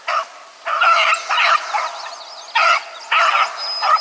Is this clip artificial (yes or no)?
no